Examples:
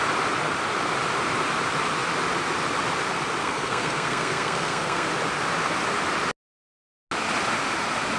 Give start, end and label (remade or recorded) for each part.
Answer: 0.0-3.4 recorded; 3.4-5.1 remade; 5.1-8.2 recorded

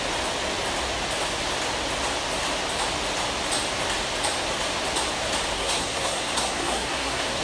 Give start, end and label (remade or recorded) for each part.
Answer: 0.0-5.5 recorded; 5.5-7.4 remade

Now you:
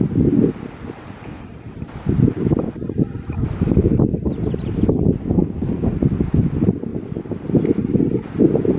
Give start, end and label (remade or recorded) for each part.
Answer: 0.0-5.2 recorded; 5.2-5.9 remade; 5.9-8.8 recorded

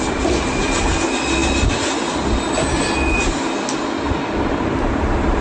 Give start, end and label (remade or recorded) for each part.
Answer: 0.0-5.4 recorded

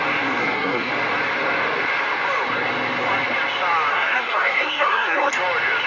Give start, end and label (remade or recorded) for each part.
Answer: 0.0-0.4 recorded; 0.4-0.9 remade; 0.9-3.9 recorded; 3.9-5.3 remade; 5.3-5.9 recorded

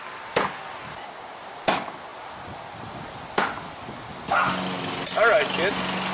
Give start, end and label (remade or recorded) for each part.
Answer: 0.0-6.1 recorded